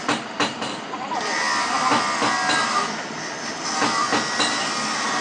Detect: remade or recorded recorded